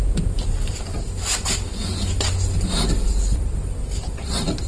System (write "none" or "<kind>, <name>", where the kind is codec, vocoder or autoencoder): none